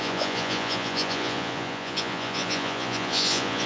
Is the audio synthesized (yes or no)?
yes